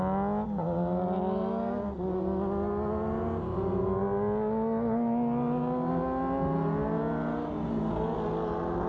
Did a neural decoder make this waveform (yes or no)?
no